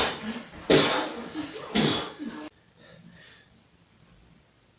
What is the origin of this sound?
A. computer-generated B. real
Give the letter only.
B